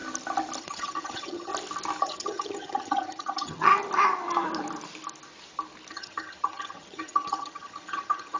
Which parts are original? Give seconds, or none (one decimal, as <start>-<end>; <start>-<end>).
0.0-0.6; 1.5-2.0; 3.7-5.9